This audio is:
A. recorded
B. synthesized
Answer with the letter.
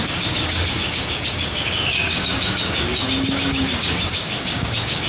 B